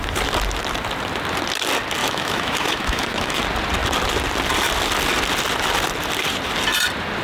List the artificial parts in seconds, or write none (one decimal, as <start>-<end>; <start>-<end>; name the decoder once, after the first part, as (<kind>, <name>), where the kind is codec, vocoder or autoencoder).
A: 2.0-3.4 (autoencoder, DAC-VAE)